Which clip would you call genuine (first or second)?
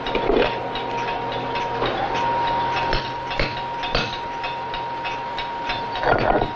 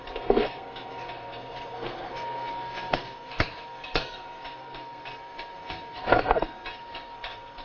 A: first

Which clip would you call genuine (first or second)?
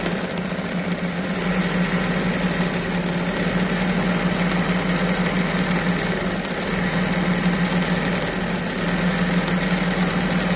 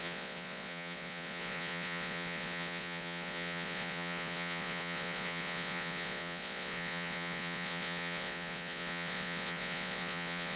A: first